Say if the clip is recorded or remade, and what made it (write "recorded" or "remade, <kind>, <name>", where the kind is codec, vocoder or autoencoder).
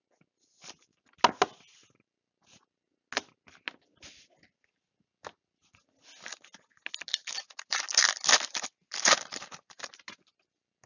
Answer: recorded